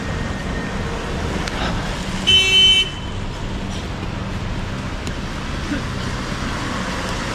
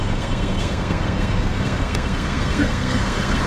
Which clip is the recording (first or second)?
first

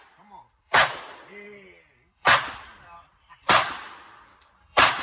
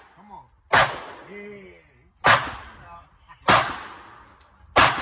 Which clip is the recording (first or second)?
second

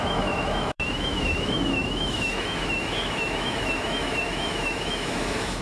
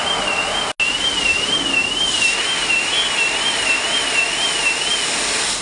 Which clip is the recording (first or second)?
second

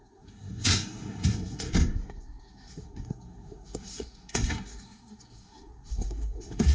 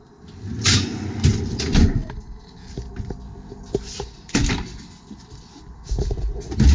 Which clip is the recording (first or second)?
second